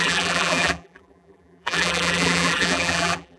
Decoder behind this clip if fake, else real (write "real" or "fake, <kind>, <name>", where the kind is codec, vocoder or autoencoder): fake, vocoder, BigVGAN v2